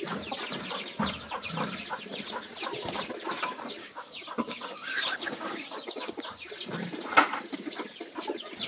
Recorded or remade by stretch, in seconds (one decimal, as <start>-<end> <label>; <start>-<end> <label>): 0.0-3.8 recorded; 3.8-6.1 remade; 6.1-8.7 recorded